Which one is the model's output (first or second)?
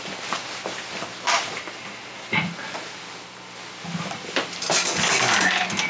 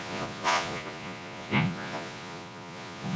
second